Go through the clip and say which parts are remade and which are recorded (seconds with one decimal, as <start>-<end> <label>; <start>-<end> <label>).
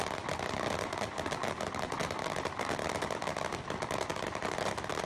0.0-4.1 recorded; 4.1-5.1 remade